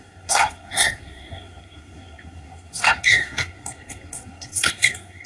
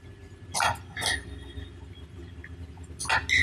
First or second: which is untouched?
second